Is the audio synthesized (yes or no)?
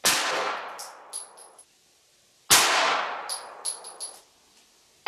no